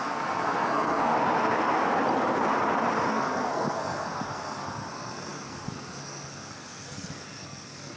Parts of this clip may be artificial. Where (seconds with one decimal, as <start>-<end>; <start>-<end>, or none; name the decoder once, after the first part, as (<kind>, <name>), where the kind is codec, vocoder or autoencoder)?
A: 0.0-1.1 (codec, SNAC); 3.1-8.0